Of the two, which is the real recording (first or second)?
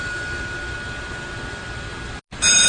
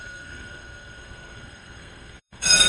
first